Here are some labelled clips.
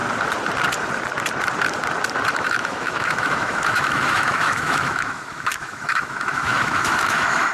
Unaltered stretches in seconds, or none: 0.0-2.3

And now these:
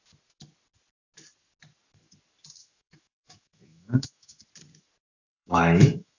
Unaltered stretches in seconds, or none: 0.0-2.6; 4.4-5.1

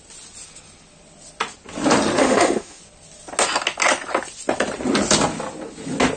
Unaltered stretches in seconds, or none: 0.0-2.2; 2.8-6.2

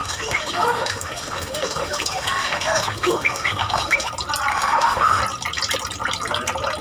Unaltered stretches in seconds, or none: 4.1-4.5; 5.2-6.8